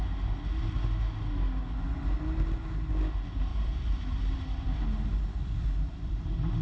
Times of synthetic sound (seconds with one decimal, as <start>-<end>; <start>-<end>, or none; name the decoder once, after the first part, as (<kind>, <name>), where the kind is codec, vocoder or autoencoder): 3.5-6.1 (vocoder, BigVGAN v2)